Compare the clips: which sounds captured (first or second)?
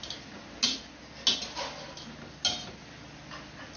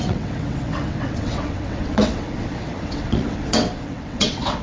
first